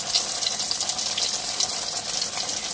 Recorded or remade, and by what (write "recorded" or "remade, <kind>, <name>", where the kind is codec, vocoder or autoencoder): recorded